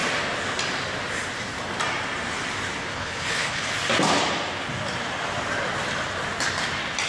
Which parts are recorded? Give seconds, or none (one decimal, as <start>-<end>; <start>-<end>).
0.0-2.9; 3.7-7.1